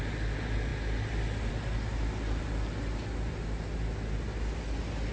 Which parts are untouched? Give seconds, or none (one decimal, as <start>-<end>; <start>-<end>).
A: 0.0-5.1